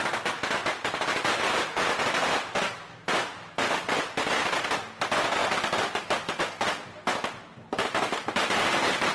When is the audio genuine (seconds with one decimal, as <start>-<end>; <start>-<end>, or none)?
0.0-0.6; 2.6-5.4; 6.4-8.4